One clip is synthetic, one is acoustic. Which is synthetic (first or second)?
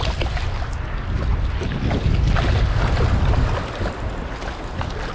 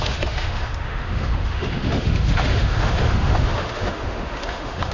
second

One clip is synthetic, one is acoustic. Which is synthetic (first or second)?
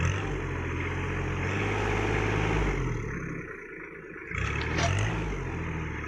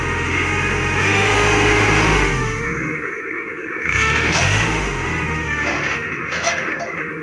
second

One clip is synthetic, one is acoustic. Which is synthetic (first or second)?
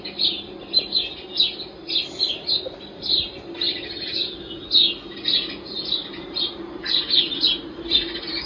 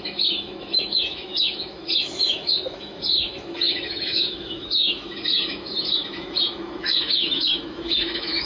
second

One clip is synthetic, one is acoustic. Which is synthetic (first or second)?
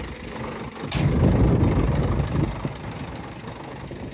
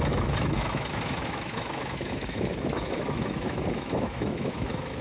second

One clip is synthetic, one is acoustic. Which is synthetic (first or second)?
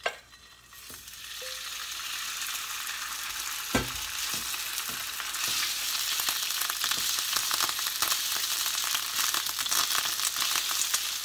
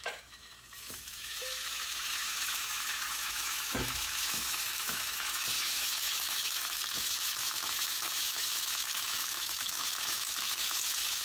second